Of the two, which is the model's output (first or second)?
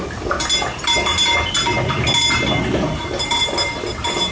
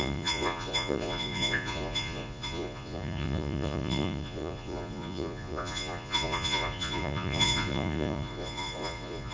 second